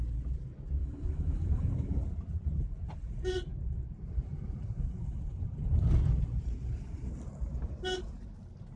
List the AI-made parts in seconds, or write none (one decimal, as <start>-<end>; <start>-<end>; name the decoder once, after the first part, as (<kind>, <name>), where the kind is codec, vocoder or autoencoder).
0.8-2.0 (autoencoder, DAC-VAE)